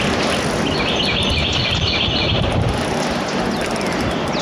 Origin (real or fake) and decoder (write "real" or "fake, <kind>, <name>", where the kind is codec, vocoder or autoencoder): real